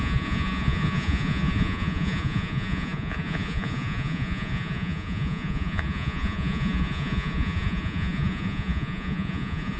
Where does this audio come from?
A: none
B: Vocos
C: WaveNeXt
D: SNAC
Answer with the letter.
B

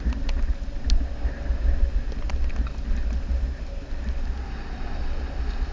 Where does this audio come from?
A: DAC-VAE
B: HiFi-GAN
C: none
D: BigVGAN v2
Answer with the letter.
C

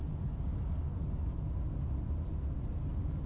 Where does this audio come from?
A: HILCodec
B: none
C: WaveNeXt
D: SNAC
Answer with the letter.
B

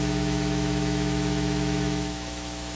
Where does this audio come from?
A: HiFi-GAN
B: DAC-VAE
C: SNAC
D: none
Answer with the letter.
B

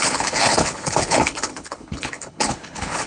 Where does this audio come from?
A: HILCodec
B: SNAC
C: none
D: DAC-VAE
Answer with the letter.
A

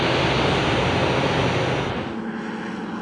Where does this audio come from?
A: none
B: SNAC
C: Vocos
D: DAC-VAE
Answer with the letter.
A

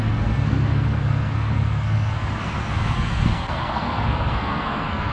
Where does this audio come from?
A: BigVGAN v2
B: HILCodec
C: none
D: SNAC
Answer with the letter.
D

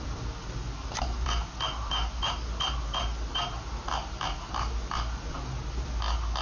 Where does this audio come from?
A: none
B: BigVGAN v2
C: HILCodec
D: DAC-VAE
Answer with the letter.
A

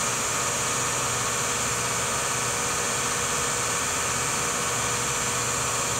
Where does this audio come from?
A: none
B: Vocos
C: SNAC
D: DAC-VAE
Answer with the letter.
A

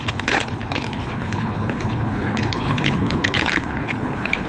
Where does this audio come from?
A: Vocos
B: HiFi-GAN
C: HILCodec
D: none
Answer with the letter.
C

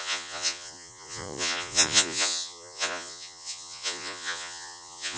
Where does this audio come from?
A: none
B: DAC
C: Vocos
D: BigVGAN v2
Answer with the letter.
C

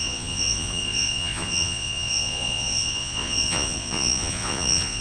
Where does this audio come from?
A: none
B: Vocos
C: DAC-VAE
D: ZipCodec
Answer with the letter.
B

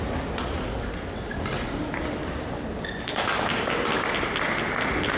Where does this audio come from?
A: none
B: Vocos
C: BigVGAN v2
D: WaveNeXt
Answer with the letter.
A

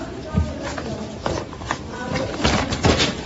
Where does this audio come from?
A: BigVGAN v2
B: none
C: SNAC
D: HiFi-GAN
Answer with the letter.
A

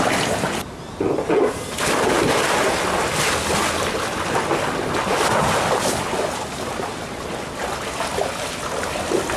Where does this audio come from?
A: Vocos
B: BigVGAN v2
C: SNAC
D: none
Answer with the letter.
D